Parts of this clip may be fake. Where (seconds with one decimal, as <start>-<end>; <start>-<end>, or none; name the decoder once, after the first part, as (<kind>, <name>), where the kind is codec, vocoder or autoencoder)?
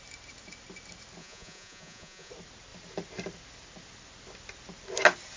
1.2-2.3 (vocoder, Vocos)